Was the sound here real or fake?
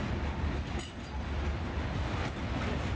real